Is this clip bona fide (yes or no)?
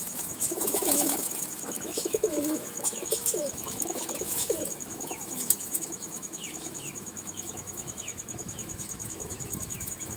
no